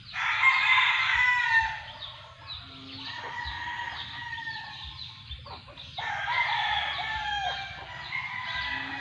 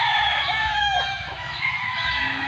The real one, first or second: first